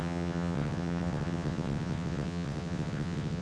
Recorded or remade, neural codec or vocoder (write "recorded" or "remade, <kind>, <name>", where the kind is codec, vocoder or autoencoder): remade, vocoder, WaveNeXt